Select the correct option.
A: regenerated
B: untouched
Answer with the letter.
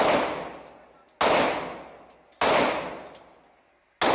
B